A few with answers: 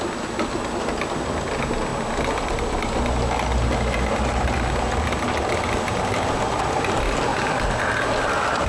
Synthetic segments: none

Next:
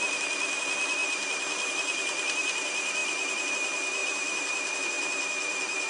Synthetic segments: none

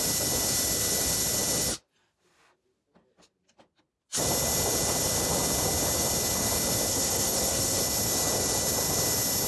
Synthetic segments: 6.9-7.8 (codec, SNAC)